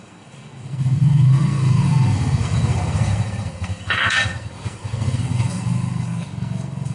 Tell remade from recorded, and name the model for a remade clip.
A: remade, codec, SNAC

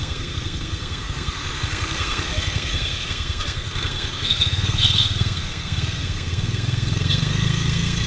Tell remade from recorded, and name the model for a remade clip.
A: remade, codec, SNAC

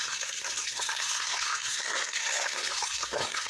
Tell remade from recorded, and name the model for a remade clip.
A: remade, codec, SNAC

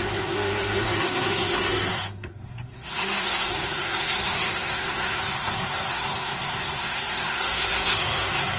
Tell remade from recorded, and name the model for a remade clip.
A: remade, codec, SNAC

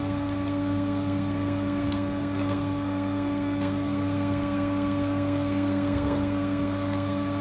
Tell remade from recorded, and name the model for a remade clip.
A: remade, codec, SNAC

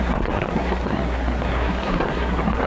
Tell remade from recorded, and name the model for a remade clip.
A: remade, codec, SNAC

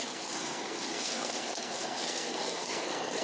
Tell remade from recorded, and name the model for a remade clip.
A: remade, codec, SNAC